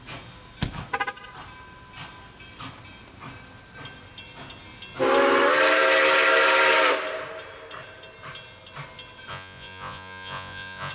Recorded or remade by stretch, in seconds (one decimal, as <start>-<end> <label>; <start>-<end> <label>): 0.0-9.3 recorded; 9.3-10.9 remade